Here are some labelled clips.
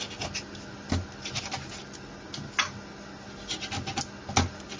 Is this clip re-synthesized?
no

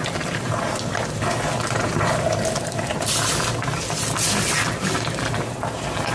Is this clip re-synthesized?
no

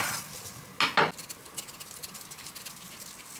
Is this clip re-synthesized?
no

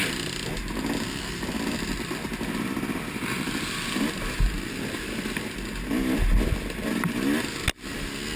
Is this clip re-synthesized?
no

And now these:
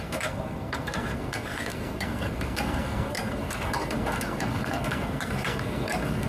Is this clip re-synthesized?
yes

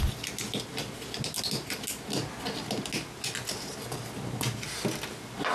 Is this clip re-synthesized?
no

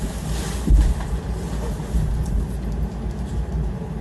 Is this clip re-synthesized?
no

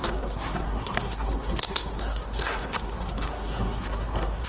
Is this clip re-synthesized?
yes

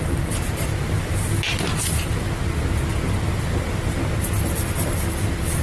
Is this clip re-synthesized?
no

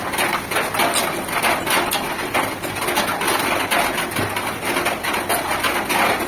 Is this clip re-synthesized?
no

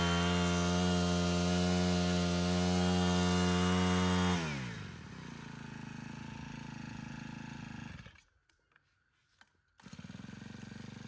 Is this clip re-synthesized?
no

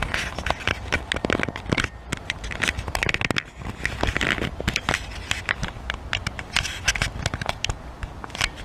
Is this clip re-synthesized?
no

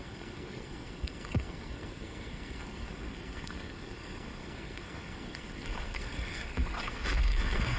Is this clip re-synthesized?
yes